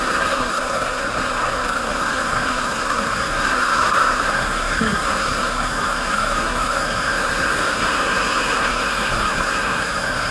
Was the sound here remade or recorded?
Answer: remade